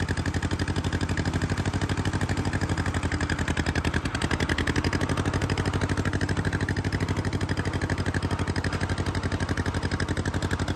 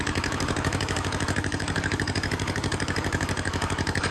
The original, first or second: first